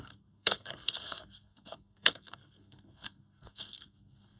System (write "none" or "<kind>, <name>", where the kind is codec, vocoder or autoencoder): codec, SNAC